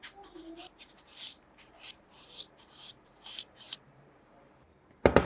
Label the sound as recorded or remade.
remade